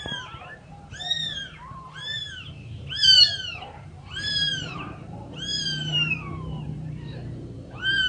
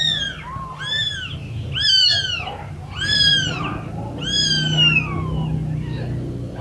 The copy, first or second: first